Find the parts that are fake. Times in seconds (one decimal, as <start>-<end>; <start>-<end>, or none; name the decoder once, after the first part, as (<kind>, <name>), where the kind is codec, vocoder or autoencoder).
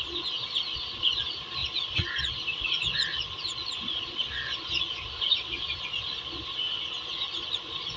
0.0-8.0 (vocoder, Vocos)